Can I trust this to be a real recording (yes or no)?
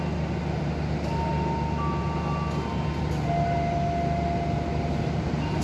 yes